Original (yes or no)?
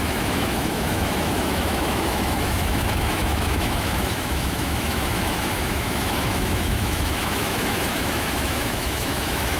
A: no